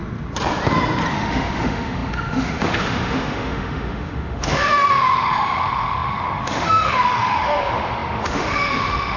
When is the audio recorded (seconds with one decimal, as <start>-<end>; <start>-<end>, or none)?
0.0-1.1